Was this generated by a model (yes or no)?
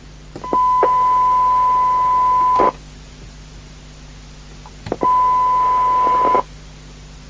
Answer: no